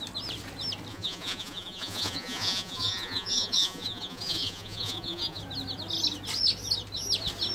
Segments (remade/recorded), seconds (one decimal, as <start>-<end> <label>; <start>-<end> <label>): 0.0-0.9 recorded; 0.9-5.4 remade; 5.4-7.5 recorded